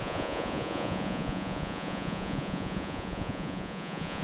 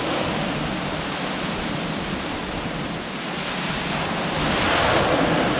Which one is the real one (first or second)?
second